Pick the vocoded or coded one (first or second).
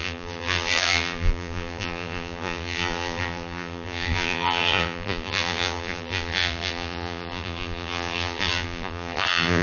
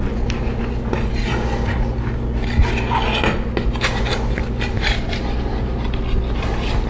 first